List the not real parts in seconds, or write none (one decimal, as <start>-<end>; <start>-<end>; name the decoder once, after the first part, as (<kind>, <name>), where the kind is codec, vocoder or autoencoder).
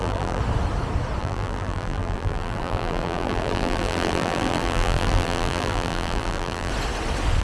0.0-0.4 (vocoder, BigVGAN v2); 1.2-6.7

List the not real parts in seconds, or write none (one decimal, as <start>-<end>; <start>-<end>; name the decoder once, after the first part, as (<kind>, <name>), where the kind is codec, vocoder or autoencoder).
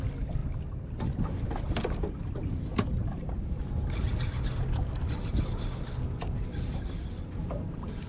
3.0-3.6 (vocoder, BigVGAN v2)